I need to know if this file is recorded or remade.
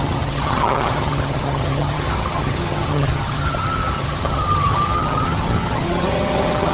remade